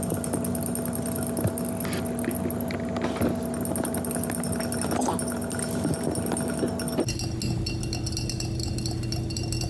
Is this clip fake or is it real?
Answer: real